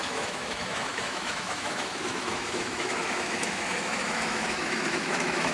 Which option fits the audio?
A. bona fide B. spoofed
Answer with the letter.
B